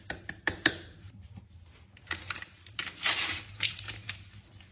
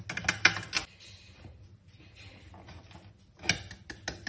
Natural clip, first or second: second